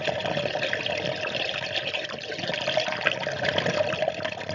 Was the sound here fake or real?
real